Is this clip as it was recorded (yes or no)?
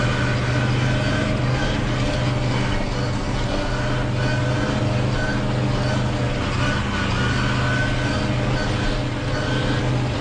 yes